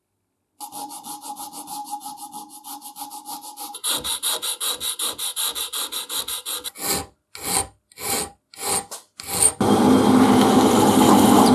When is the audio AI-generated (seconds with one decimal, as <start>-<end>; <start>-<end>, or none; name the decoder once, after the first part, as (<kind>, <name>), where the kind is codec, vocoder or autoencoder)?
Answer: none

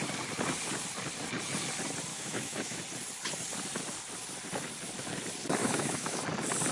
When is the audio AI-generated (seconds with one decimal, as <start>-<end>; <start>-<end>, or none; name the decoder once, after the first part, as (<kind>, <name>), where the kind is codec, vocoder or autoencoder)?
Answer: 2.1-2.8 (autoencoder, DAC-VAE); 5.6-6.2

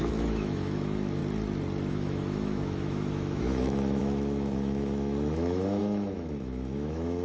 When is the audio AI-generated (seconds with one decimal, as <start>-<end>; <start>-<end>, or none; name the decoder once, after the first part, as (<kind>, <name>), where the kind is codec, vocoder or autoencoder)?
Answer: 0.0-1.2 (autoencoder, DAC-VAE); 1.9-7.2

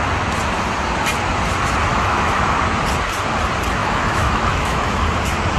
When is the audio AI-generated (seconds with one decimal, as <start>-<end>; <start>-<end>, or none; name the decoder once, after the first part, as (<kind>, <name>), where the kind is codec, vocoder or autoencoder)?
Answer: 1.9-2.6 (autoencoder, DAC-VAE); 3.8-5.0

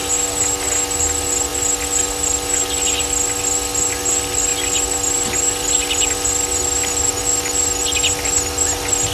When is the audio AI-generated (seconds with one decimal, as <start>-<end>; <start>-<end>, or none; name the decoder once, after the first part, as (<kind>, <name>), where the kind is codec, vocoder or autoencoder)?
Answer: none

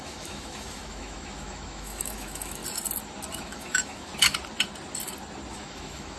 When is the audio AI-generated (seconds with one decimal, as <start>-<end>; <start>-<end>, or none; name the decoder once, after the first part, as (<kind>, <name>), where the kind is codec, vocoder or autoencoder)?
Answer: 0.0-2.6 (autoencoder, DAC-VAE); 3.3-4.1; 5.5-6.2